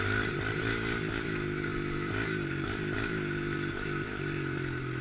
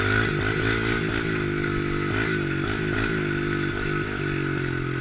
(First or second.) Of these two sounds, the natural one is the second